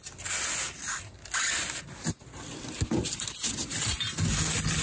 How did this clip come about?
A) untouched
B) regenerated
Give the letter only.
A